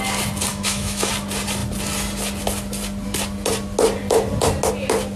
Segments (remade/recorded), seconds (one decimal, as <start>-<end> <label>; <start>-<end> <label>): 0.0-0.5 recorded; 0.5-1.1 remade; 1.1-5.2 recorded